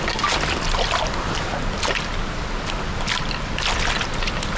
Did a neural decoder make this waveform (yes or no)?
no